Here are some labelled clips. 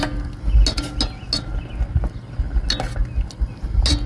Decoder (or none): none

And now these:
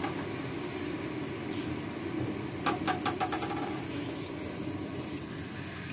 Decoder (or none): none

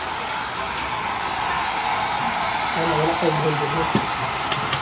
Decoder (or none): vocoder, BigVGAN v2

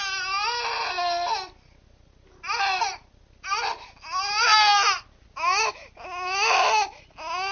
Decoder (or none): none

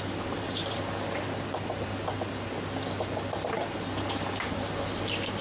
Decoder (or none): none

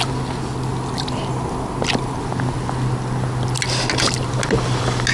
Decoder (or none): none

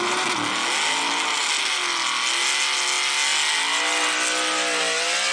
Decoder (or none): none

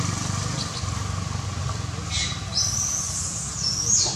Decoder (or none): none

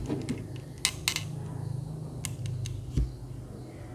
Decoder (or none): none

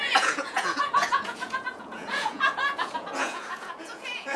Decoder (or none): vocoder, Vocos